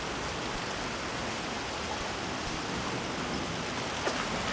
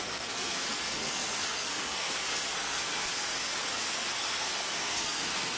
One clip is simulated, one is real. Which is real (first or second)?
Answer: first